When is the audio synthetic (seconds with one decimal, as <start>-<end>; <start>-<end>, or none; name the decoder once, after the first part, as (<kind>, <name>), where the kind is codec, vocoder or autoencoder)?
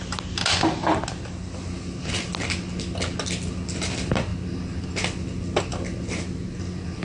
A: none